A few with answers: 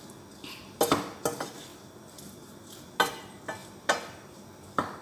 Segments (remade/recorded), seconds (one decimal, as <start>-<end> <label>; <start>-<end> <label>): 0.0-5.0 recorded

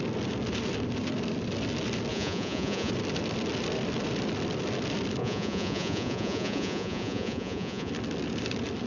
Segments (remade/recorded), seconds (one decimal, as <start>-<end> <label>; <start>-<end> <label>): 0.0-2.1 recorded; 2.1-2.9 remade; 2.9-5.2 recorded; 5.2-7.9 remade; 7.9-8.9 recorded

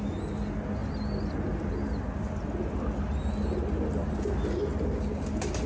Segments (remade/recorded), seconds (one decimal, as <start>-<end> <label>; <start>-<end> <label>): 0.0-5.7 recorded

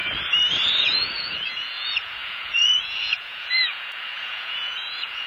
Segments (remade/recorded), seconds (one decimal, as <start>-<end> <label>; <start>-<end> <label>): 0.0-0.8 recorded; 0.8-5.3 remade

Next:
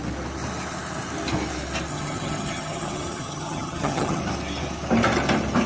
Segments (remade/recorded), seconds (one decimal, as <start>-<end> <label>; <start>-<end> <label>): 0.0-1.9 recorded; 1.9-4.2 remade; 4.2-5.7 recorded

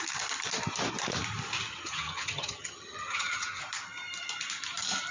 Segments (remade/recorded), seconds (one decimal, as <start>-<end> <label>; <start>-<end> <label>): 0.0-1.7 recorded; 1.7-3.6 remade; 3.6-5.1 recorded

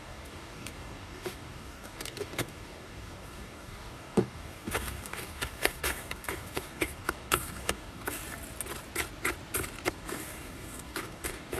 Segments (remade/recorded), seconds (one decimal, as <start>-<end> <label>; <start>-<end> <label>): 0.0-8.2 remade; 8.2-9.9 recorded; 9.9-11.6 remade